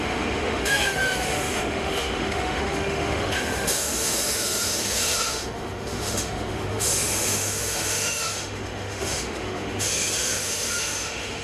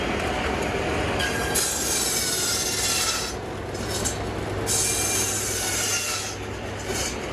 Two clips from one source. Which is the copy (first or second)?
first